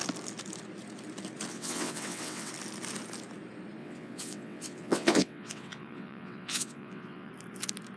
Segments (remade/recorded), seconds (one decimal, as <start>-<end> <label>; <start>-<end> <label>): 0.0-1.5 recorded; 1.5-2.5 remade; 2.5-3.8 recorded; 3.8-7.3 remade; 7.3-8.0 recorded